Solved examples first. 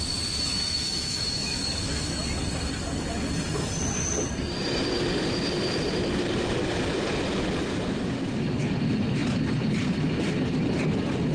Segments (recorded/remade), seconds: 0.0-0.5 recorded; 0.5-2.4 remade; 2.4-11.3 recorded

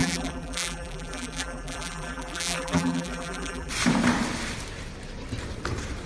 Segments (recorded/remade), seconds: 0.0-3.7 remade; 3.7-6.1 recorded

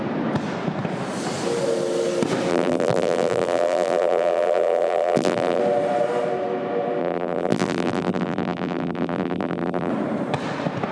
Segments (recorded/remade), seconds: 0.0-2.5 recorded; 2.5-5.6 remade; 5.6-7.0 recorded; 7.0-9.9 remade; 9.9-10.9 recorded

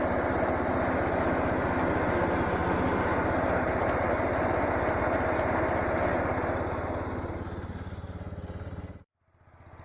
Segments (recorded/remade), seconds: 0.0-9.8 recorded